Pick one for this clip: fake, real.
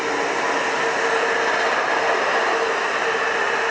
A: real